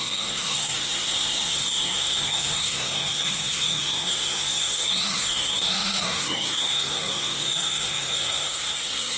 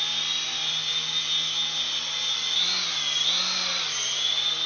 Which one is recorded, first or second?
second